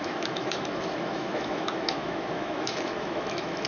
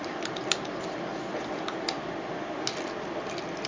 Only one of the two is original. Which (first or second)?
second